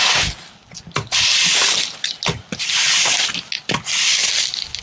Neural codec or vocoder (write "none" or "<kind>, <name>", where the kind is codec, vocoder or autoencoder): none